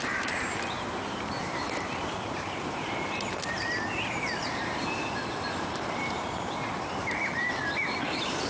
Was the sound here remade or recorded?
remade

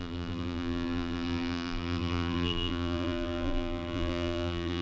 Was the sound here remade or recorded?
remade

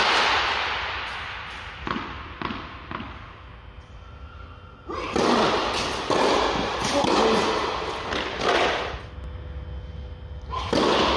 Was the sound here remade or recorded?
recorded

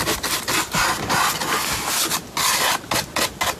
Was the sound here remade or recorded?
recorded